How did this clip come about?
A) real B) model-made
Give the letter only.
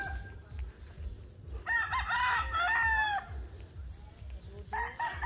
A